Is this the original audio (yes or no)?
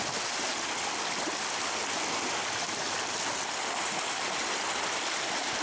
yes